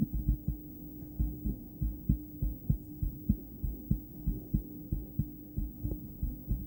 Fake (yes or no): yes